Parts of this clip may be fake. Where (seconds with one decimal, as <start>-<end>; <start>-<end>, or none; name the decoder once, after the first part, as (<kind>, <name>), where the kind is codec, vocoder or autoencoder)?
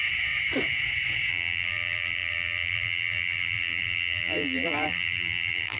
1.3-5.8 (vocoder, BigVGAN v2)